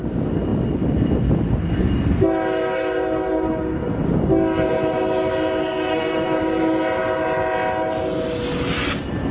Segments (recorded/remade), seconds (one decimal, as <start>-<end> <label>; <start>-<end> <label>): 0.0-5.6 recorded; 5.6-6.4 remade; 6.4-9.3 recorded